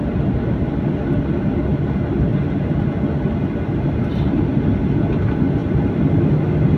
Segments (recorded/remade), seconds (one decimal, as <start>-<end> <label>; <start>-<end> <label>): 0.0-6.8 recorded